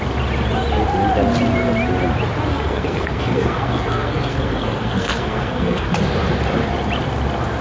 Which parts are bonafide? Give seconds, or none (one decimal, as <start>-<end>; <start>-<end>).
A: 0.0-2.5; 5.9-7.6

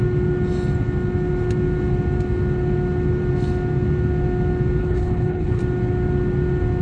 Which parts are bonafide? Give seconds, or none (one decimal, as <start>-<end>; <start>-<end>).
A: 0.0-4.8; 5.6-6.8

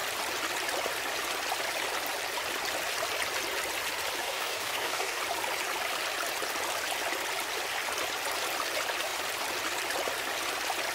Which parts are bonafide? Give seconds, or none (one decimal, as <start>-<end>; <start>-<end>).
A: 0.0-4.2; 5.2-10.9

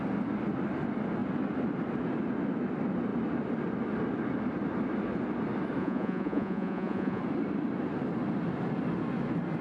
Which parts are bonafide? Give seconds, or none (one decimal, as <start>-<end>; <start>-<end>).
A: 0.0-5.8; 7.2-9.6

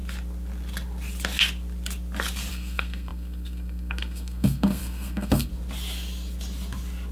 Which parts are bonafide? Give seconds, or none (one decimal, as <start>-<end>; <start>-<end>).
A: 0.0-2.5; 5.5-7.1

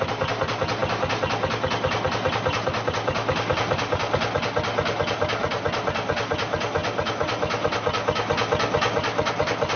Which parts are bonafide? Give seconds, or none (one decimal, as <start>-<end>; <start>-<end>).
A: 0.0-9.8

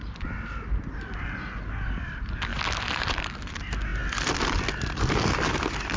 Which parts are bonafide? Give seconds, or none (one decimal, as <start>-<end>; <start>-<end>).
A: 0.0-6.0